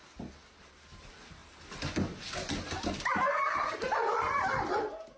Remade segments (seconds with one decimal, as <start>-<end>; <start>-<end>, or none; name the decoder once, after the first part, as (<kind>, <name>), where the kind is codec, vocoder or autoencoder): 0.7-1.4 (vocoder, BigVGAN v2); 4.5-5.2